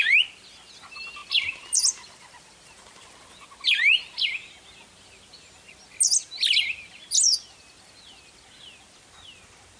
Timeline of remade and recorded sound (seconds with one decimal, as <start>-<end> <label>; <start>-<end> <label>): 0.0-9.8 recorded